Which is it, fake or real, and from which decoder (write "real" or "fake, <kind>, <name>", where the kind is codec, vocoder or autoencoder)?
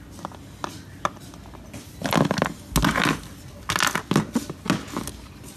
real